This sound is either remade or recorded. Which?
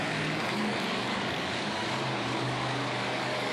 remade